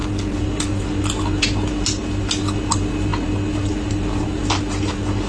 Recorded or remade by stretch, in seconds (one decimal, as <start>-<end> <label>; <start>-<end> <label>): 0.0-5.3 recorded